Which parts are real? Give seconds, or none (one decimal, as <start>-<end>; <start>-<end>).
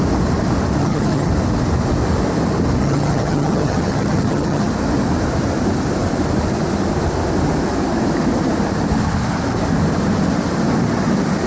0.0-0.8; 1.3-2.8; 4.7-11.5